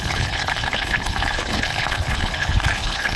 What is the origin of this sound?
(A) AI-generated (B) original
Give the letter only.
A